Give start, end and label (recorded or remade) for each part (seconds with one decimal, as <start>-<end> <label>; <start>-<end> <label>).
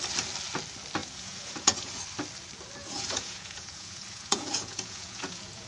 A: 0.0-1.0 recorded; 1.0-2.0 remade; 2.0-2.8 recorded; 2.8-5.7 remade